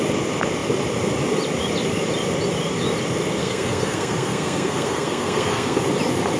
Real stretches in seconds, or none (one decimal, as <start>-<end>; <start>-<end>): 0.0-3.4; 5.8-6.4